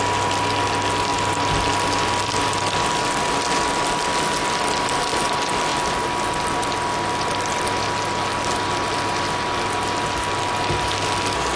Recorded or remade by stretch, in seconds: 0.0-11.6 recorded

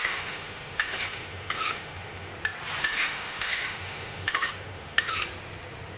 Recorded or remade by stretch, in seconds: 0.0-2.3 remade; 2.3-2.8 recorded; 2.8-5.2 remade; 5.2-6.0 recorded

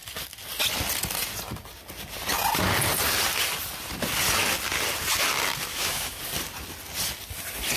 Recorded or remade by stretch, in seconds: 0.0-5.7 recorded; 5.7-6.2 remade; 6.2-7.8 recorded